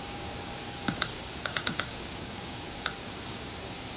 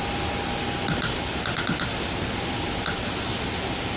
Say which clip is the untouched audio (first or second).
second